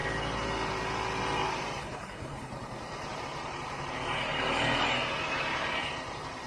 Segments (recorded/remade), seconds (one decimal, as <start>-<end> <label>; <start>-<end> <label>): 0.0-1.8 recorded; 1.8-2.5 remade; 2.5-6.5 recorded